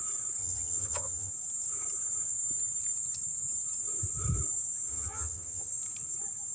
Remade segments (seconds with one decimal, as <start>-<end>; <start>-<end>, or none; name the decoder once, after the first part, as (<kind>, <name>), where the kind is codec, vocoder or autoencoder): 0.4-1.3 (vocoder, HiFi-GAN); 4.9-5.7